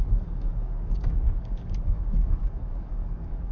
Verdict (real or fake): fake